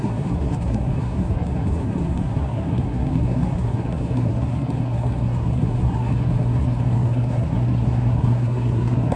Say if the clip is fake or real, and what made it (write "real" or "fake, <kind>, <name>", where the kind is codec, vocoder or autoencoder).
fake, codec, SNAC